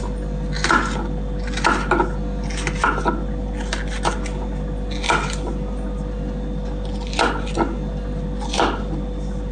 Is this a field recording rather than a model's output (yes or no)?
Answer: yes